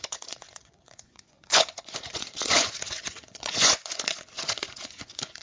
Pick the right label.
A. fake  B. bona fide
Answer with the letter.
A